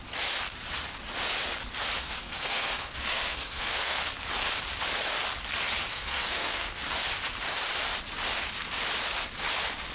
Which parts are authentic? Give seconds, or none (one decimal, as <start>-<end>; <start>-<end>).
0.0-2.0; 4.0-5.9; 6.8-9.9